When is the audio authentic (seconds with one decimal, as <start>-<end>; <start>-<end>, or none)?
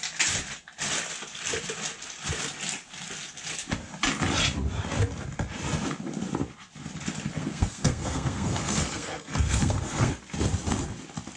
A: 0.0-7.4; 10.1-11.4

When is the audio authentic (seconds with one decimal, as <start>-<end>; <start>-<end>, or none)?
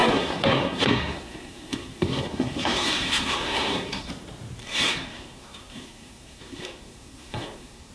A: 4.1-4.6